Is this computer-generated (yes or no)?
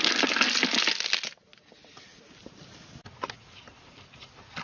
no